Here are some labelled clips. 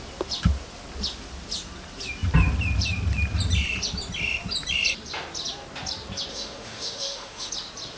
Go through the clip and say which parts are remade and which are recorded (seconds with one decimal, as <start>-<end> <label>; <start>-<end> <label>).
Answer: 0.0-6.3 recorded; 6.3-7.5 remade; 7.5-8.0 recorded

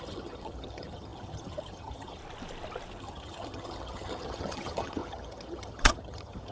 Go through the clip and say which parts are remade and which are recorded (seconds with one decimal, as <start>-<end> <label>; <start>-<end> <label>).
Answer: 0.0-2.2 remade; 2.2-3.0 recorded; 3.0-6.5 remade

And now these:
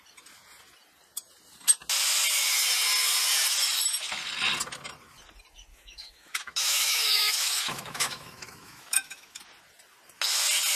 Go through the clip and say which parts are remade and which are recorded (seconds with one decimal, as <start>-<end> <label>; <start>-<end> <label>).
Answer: 0.0-5.7 recorded; 5.7-9.4 remade; 9.4-10.8 recorded

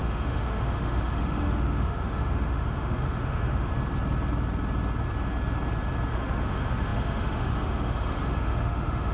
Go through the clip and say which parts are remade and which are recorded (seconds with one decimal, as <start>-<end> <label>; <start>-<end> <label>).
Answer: 0.0-3.7 remade; 3.7-6.1 recorded; 6.1-9.1 remade

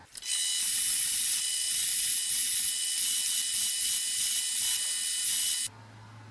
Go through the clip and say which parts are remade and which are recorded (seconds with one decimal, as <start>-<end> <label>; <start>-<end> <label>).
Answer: 0.0-6.3 recorded